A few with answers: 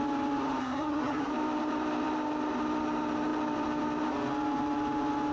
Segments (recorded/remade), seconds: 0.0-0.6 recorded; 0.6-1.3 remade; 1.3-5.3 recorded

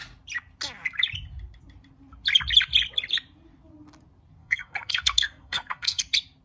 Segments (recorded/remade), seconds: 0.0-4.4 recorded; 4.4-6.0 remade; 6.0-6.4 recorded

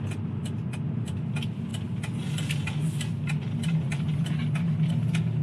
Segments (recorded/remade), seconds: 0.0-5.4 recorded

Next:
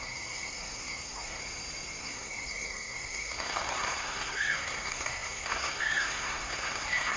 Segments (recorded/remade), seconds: 0.0-1.4 remade; 1.4-2.0 recorded; 2.0-7.2 remade